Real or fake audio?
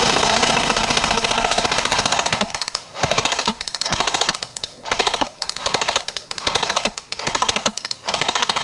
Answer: fake